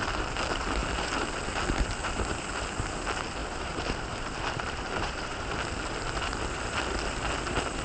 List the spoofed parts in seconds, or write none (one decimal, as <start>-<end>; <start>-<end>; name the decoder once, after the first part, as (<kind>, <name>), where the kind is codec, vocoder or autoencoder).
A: 3.4-5.5 (vocoder, BigVGAN v2)